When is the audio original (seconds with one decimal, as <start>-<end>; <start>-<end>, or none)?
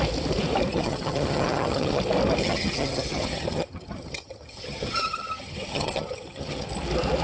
0.0-0.7; 2.0-2.4; 6.7-7.2